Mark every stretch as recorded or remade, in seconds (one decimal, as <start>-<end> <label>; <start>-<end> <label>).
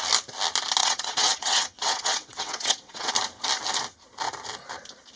0.0-0.8 recorded; 0.8-3.1 remade; 3.1-5.2 recorded